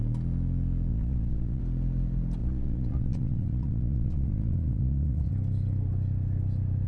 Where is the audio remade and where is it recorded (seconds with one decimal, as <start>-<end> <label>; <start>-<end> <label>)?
0.0-0.9 recorded; 0.9-1.6 remade; 1.6-2.4 recorded; 2.4-5.3 remade; 5.3-6.9 recorded